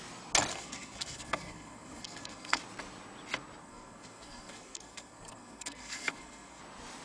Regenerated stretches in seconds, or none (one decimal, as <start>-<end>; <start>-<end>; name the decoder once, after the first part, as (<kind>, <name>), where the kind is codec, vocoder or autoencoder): 0.5-2.6 (codec, SNAC); 3.6-6.6